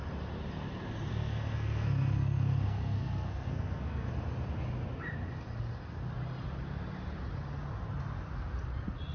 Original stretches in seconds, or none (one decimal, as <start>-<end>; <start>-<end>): 0.0-1.1; 4.1-9.1